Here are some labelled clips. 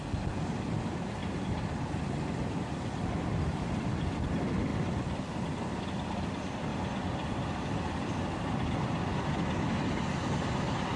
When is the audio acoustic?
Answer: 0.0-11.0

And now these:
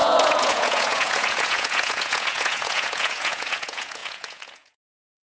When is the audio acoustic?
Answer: none

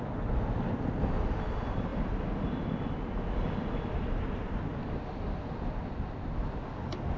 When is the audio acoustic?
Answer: 0.0-7.2